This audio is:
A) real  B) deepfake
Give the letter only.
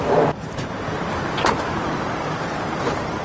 B